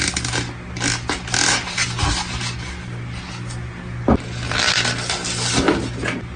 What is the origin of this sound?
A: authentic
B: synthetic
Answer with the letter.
A